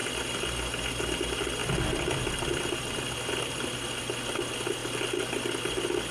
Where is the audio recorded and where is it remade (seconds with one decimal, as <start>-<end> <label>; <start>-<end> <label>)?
0.0-6.1 recorded